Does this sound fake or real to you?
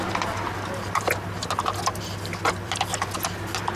real